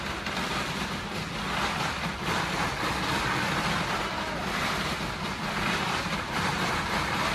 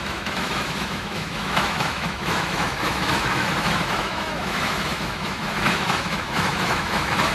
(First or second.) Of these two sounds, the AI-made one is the second